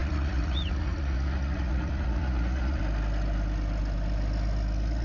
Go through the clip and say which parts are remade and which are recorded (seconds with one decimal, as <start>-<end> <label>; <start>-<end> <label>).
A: 0.0-2.8 remade; 2.8-5.0 recorded